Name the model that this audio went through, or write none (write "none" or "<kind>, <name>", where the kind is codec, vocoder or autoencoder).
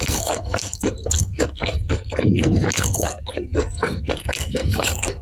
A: codec, SNAC